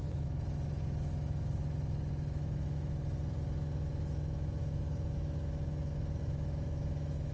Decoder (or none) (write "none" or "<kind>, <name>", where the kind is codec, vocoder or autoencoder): autoencoder, DAC-VAE